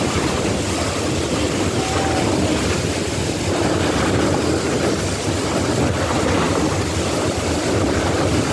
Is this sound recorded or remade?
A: recorded